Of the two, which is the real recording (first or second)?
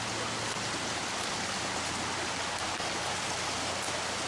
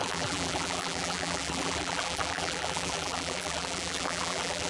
first